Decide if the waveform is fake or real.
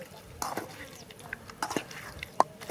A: real